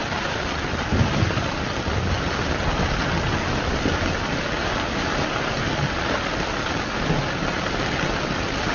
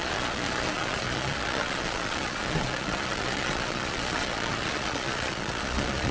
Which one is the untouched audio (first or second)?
first